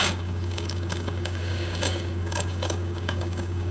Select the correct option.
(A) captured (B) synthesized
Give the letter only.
B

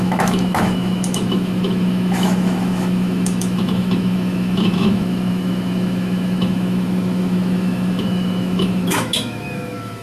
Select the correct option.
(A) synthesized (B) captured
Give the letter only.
A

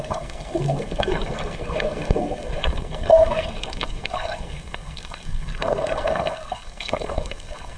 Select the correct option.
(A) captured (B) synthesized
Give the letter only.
B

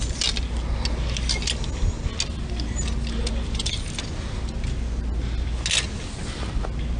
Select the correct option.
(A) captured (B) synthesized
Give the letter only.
A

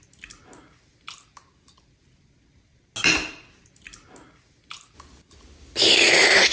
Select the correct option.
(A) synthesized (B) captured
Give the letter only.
B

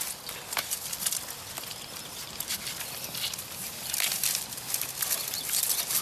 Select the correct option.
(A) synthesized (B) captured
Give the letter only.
B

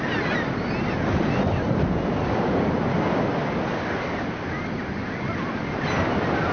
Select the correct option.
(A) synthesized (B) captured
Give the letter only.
B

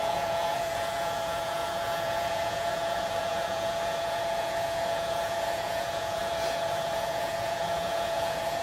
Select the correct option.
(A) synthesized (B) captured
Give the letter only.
A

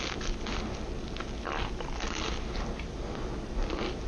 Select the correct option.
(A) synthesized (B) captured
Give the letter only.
B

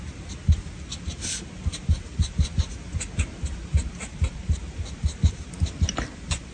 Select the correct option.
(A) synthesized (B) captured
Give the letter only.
B